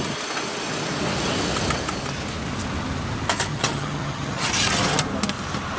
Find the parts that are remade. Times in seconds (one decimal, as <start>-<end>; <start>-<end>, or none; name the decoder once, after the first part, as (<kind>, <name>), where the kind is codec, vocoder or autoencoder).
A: 3.5-4.5 (vocoder, HiFi-GAN)